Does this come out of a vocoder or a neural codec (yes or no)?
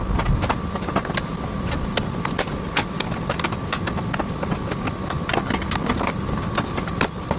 no